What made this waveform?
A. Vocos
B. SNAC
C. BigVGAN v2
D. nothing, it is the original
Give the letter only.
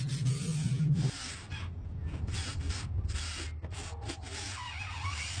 D